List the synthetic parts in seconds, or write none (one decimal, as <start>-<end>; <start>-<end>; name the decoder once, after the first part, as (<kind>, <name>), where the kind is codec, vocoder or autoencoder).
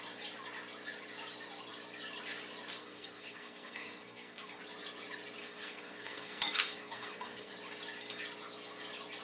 2.8-4.6 (codec, SNAC); 5.4-7.5